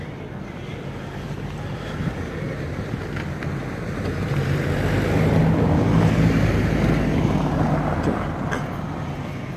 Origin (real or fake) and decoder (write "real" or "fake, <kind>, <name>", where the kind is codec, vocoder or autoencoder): real